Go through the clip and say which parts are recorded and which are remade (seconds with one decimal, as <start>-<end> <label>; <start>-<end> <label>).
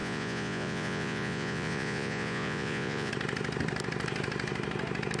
0.0-3.1 remade; 3.1-5.2 recorded